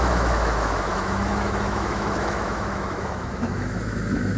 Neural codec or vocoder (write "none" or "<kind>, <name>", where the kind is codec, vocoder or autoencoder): autoencoder, DAC-VAE